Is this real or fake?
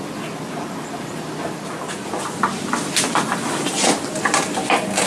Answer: real